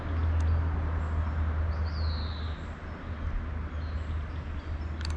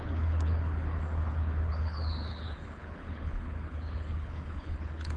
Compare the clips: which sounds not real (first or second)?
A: second